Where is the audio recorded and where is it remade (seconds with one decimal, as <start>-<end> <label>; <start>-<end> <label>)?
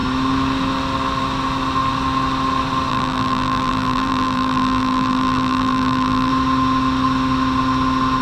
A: 0.0-2.9 recorded; 2.9-6.3 remade; 6.3-8.2 recorded